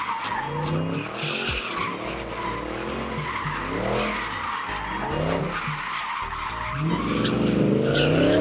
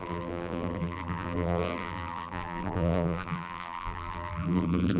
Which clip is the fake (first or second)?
second